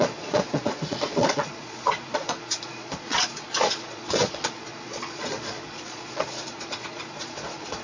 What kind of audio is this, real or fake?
fake